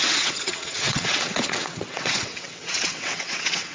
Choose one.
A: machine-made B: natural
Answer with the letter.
A